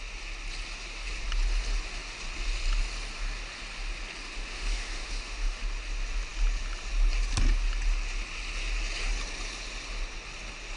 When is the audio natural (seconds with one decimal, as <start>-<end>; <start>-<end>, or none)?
0.0-4.2; 5.6-10.8